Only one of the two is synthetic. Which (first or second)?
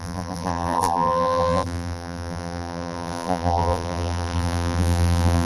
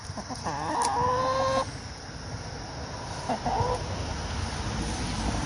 first